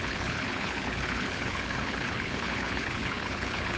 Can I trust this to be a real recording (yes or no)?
no